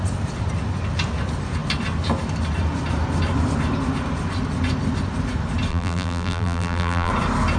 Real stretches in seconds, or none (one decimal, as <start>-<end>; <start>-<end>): 0.0-5.7; 7.1-7.6